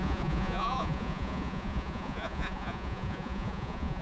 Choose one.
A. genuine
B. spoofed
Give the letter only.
B